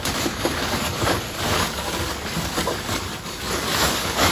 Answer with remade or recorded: remade